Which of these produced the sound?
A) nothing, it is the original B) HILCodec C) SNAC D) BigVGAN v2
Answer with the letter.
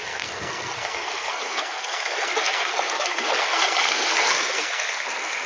C